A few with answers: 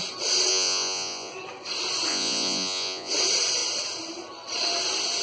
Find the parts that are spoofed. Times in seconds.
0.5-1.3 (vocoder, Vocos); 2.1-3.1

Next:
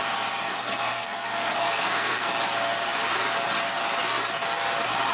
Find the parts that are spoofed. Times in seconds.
0.5-2.3 (codec, SNAC)